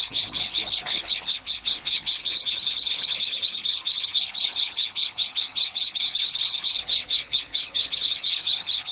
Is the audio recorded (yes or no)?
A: no